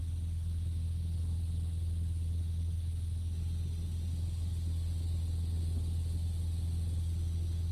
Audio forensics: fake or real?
real